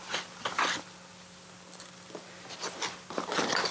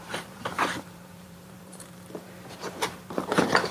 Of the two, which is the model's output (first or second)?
second